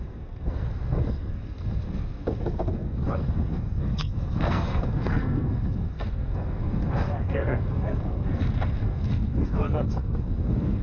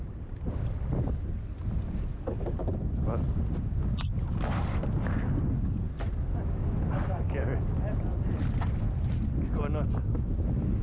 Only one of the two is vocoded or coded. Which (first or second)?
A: first